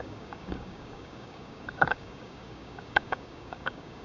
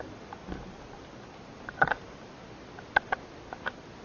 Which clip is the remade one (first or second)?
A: first